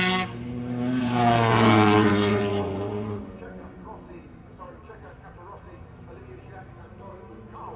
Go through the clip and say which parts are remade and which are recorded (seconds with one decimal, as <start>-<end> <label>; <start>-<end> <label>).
0.0-1.0 recorded; 1.0-5.1 remade; 5.1-7.8 recorded